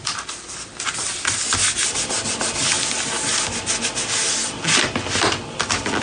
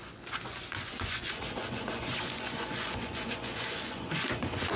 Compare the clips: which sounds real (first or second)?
first